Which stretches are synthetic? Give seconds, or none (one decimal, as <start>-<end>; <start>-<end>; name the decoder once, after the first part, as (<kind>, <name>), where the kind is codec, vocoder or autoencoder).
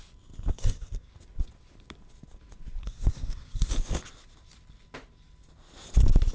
0.5-1.1 (codec, SNAC); 2.8-3.7